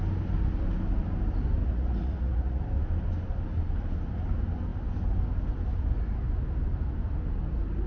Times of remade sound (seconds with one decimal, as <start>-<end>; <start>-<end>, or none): 1.6-2.6